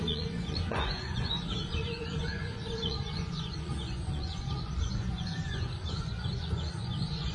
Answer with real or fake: fake